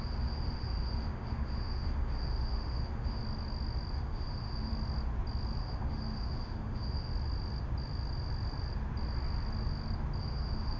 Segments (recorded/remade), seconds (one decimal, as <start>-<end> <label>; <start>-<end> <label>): 0.0-3.2 remade; 3.2-3.9 recorded; 3.9-4.7 remade; 4.7-5.6 recorded; 5.6-7.1 remade; 7.1-10.2 recorded; 10.2-10.8 remade